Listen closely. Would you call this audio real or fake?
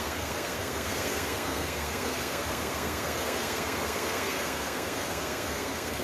fake